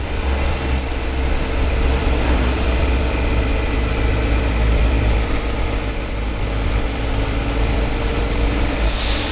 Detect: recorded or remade remade